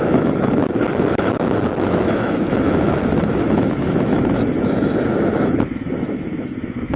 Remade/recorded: remade